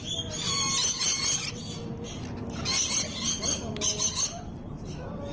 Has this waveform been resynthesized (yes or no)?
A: no